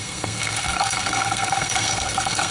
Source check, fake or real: fake